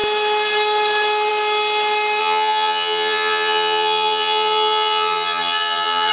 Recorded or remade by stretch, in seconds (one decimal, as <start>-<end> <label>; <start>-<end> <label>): 0.0-2.2 recorded; 2.2-6.1 remade